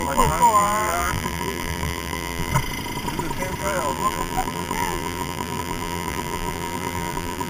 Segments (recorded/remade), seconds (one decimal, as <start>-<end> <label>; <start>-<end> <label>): 0.0-2.5 remade; 2.5-3.6 recorded; 3.6-7.5 remade